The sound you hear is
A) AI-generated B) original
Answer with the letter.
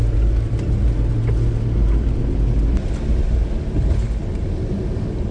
B